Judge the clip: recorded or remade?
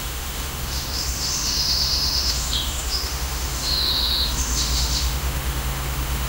remade